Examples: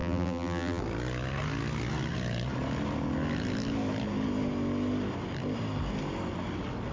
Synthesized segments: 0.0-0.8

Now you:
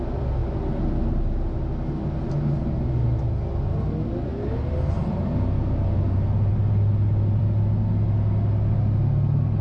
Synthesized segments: none

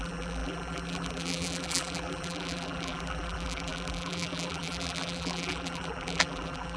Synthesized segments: 0.0-6.8

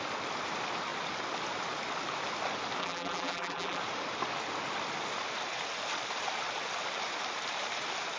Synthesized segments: 2.8-3.8

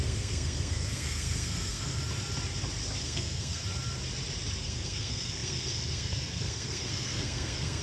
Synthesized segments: 0.0-2.0; 3.0-3.6; 4.6-7.8

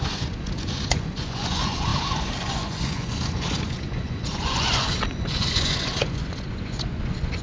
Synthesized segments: 0.0-7.4

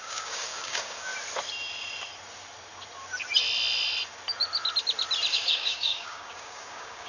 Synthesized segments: 0.0-1.1; 5.3-7.1

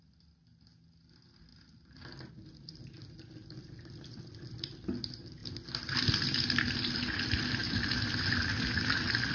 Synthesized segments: 1.5-2.3; 3.4-4.0; 7.6-8.5